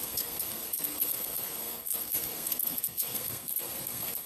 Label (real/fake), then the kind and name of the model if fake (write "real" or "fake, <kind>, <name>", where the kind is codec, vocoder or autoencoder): fake, codec, SNAC